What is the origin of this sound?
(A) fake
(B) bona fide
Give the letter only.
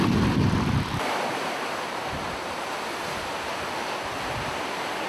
B